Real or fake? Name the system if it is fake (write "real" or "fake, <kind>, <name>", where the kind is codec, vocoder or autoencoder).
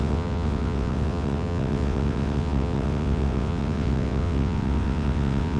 fake, vocoder, WaveNeXt